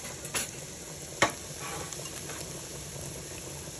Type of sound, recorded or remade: recorded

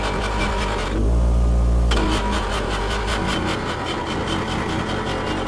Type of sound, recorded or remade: recorded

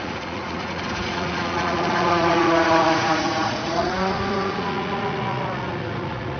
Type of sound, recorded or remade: remade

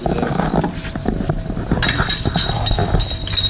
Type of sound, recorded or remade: recorded